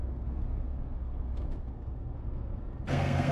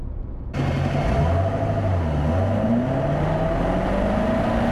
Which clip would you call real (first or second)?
second